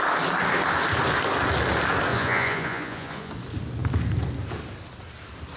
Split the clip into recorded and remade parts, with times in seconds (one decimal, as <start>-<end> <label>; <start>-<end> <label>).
0.0-2.1 recorded; 2.1-3.3 remade; 3.3-5.6 recorded